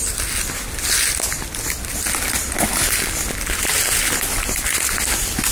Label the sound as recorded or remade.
recorded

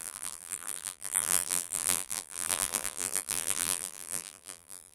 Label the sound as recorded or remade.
remade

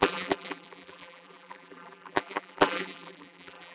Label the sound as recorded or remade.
remade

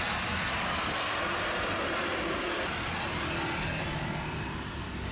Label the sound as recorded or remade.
recorded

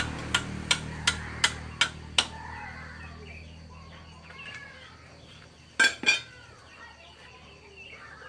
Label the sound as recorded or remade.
recorded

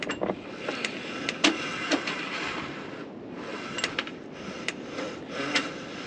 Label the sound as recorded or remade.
recorded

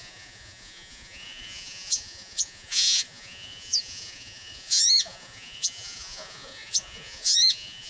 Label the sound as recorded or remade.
remade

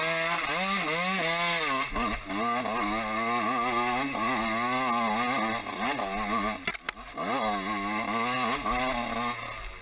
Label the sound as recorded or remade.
recorded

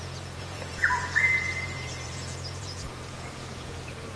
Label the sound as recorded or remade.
remade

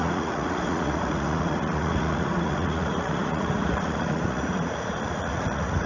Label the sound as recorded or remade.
remade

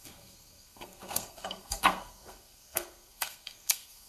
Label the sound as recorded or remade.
remade